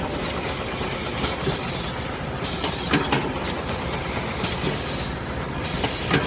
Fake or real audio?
fake